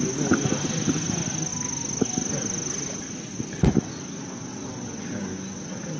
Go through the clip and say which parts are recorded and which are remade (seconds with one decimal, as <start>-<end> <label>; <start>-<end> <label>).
0.0-6.0 recorded